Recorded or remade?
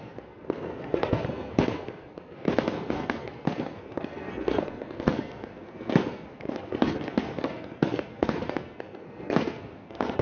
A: remade